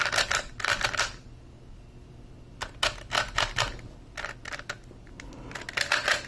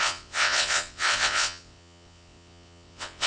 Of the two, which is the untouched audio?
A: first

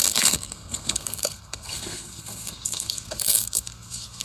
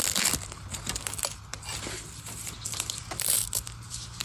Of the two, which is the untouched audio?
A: second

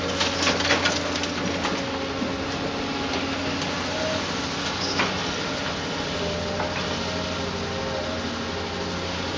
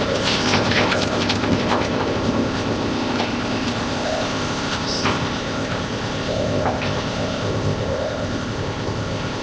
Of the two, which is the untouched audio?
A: first